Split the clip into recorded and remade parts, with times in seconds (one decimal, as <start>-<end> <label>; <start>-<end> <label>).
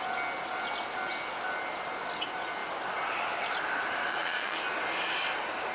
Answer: 0.0-4.1 recorded; 4.1-4.6 remade; 4.6-5.7 recorded